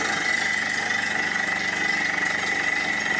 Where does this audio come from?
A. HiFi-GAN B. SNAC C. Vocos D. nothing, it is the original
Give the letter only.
D